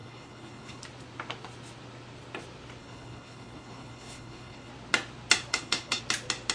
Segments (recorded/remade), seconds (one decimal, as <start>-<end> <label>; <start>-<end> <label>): 0.0-0.8 remade; 0.8-2.8 recorded; 2.8-4.7 remade; 4.7-5.5 recorded; 5.5-6.0 remade; 6.0-6.5 recorded